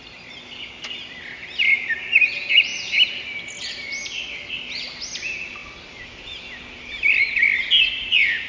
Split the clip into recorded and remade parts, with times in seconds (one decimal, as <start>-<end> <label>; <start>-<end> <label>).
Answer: 0.0-2.7 remade; 2.7-4.5 recorded; 4.5-5.6 remade; 5.6-7.2 recorded; 7.2-8.5 remade